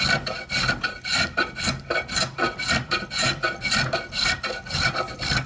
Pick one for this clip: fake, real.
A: fake